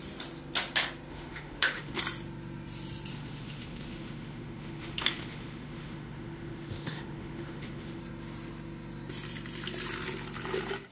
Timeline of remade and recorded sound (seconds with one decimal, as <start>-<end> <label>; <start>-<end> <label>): 0.0-1.1 recorded; 1.1-2.0 remade; 2.0-3.1 recorded; 3.1-8.0 remade; 8.0-10.9 recorded